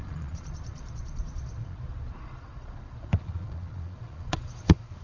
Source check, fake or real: fake